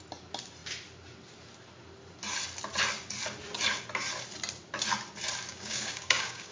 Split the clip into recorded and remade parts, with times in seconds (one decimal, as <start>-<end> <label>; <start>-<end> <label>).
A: 0.0-5.5 recorded; 5.5-6.5 remade